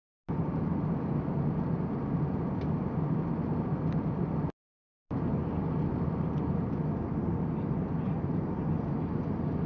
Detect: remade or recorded recorded